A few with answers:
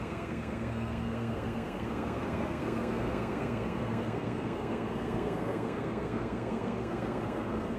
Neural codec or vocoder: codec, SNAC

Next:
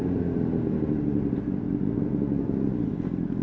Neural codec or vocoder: none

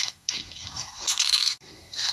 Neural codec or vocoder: codec, SNAC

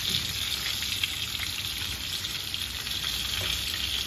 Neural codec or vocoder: none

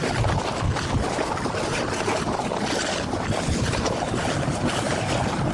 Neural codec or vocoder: none